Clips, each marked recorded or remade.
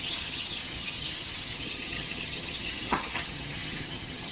remade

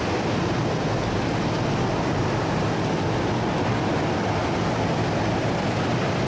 recorded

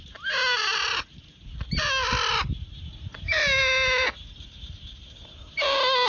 recorded